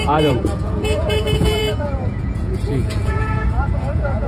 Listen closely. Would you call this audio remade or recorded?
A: remade